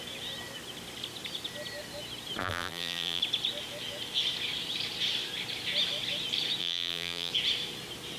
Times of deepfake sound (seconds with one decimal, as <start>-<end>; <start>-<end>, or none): 2.4-3.2; 6.6-7.3